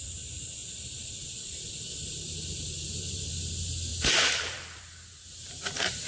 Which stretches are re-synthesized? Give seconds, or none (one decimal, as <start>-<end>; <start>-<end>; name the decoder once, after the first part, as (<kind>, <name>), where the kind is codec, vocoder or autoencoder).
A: 0.6-3.3 (vocoder, BigVGAN v2); 3.9-4.8